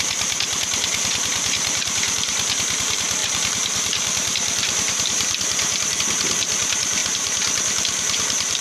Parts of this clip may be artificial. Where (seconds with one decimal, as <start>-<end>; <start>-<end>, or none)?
0.0-2.3; 2.8-8.6